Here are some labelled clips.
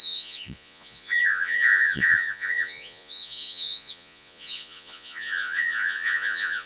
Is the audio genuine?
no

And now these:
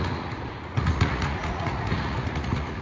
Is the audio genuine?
no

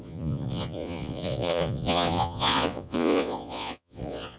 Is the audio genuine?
no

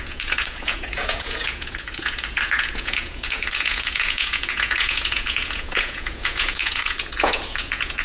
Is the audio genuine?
no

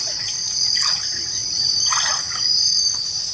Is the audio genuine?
no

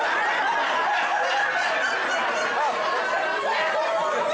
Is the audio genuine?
yes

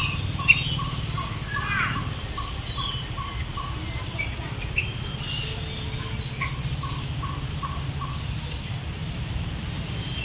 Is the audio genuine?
yes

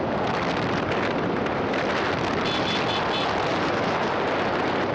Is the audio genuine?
yes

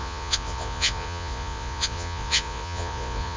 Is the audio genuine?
no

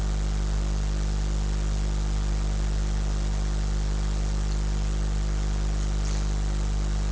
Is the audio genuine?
yes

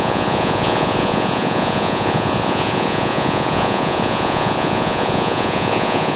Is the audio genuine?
no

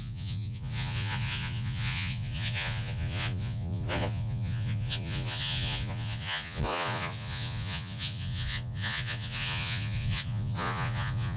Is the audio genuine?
no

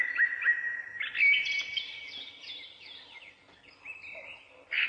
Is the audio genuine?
yes